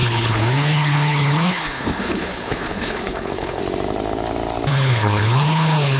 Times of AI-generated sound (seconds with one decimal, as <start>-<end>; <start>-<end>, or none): 0.0-3.6; 4.7-6.0